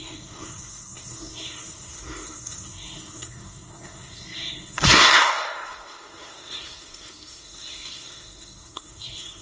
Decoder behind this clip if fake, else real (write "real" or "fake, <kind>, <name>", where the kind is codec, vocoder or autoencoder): fake, codec, SNAC